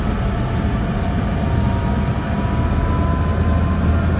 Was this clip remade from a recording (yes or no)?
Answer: no